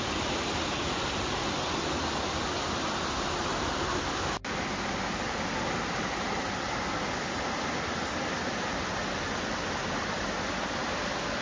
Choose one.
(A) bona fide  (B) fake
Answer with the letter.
A